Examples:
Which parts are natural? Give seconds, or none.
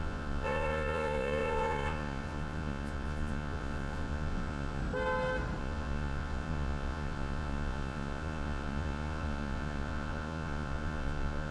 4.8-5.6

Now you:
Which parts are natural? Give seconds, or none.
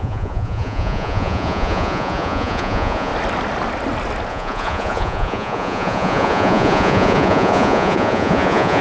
3.1-4.3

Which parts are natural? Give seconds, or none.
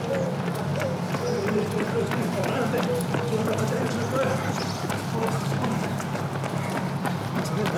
0.0-7.8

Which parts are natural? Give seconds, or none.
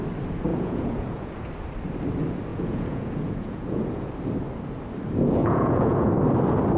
0.0-0.5; 1.5-2.5; 4.1-5.4; 6.1-6.8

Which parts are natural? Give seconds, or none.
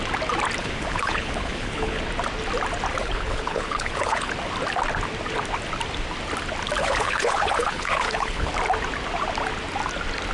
0.0-0.6; 2.0-3.0; 4.3-6.8; 8.5-10.3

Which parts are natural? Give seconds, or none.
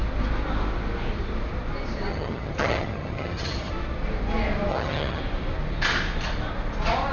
0.0-2.1; 3.7-4.7; 5.2-7.1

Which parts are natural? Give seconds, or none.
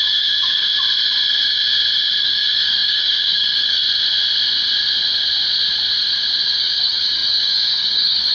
0.7-2.2; 3.8-6.6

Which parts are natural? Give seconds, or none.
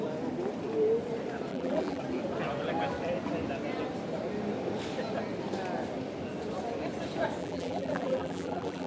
0.0-1.5; 2.0-7.4